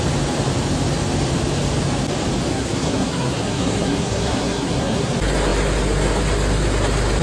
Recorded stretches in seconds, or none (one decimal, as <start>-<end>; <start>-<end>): 0.0-2.5; 5.1-7.2